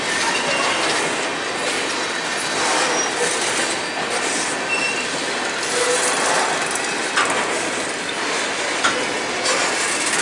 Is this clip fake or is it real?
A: real